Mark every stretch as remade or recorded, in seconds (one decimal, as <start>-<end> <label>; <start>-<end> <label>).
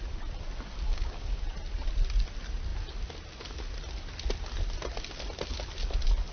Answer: 0.0-0.9 recorded; 0.9-1.4 remade; 1.4-6.3 recorded